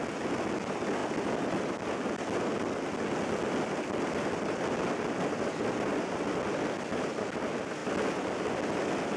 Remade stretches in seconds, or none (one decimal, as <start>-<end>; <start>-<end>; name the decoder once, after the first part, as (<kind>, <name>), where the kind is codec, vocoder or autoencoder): none